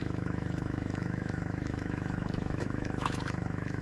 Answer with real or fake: fake